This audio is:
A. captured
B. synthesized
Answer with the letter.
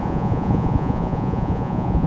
B